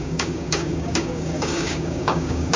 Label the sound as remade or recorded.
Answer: remade